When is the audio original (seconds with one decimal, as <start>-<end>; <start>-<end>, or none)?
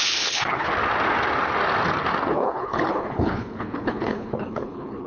0.7-2.3